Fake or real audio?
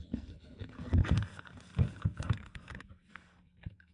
fake